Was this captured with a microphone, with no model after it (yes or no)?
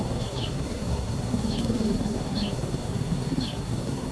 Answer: no